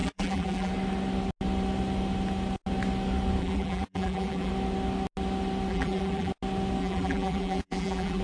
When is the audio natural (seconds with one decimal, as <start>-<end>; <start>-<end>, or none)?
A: 0.7-3.4; 4.5-5.7; 6.3-6.8